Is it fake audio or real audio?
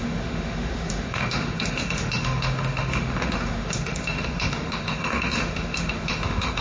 fake